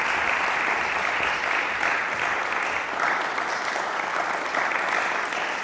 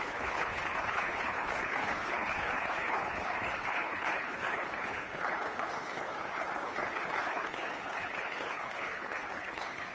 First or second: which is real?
first